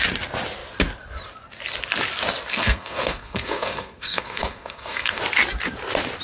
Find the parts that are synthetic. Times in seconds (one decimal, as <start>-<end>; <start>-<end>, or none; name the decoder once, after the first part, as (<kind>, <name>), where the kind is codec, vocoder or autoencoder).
2.5-5.2 (codec, SNAC)